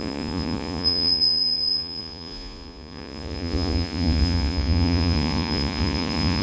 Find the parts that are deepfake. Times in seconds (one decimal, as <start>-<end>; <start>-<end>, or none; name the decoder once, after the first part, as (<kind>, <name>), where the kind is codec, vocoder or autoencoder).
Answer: 0.0-6.4 (vocoder, Vocos)